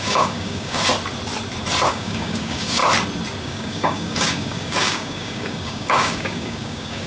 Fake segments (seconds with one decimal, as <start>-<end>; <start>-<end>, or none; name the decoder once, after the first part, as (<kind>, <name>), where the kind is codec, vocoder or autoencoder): 0.0-0.9 (codec, DAC); 1.9-2.8; 3.4-7.1